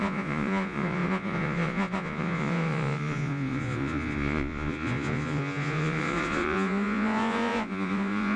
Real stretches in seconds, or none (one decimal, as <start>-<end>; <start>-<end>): none